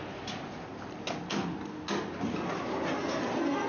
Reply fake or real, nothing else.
real